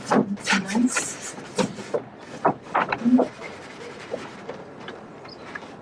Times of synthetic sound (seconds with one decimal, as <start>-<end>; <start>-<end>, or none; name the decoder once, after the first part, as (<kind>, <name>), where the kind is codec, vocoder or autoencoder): 0.0-1.8 (vocoder, BigVGAN v2); 2.5-5.8

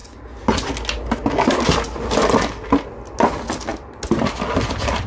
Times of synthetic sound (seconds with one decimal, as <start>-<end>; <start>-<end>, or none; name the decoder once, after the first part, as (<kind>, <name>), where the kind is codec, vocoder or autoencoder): none